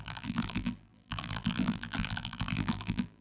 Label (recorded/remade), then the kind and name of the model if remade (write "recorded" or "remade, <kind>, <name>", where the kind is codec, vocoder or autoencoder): remade, vocoder, BigVGAN v2